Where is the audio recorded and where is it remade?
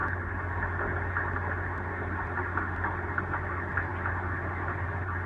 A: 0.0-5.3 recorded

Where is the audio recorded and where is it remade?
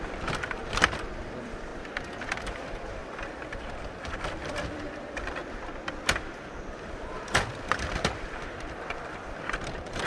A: 0.0-1.7 remade; 1.7-2.4 recorded; 2.4-5.4 remade; 5.4-6.1 recorded; 6.1-10.1 remade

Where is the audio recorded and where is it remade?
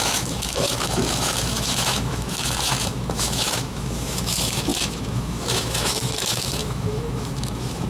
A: 0.0-7.9 remade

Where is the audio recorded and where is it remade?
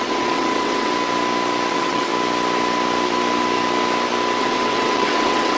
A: 0.0-0.9 remade; 0.9-1.7 recorded; 1.7-2.1 remade; 2.1-4.4 recorded; 4.4-5.6 remade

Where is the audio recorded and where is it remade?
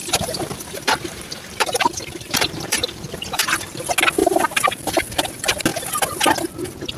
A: 0.0-3.6 remade; 3.6-4.2 recorded; 4.2-4.9 remade; 4.9-7.0 recorded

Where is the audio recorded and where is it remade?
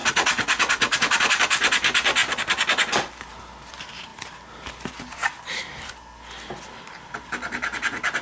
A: 0.0-1.3 remade; 1.3-8.2 recorded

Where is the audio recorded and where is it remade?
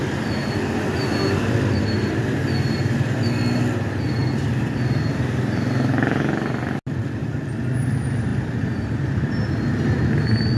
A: 0.0-4.2 recorded; 4.2-5.7 remade; 5.7-8.3 recorded; 8.3-9.3 remade; 9.3-10.6 recorded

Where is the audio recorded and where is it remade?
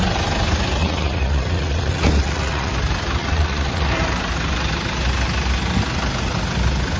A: 0.0-0.8 recorded; 0.8-2.7 remade; 2.7-3.2 recorded; 3.2-3.9 remade; 3.9-7.0 recorded